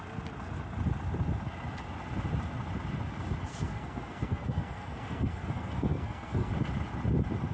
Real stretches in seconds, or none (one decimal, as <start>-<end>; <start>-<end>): 0.0-3.5; 6.5-7.5